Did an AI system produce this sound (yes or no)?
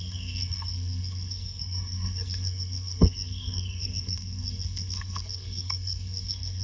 yes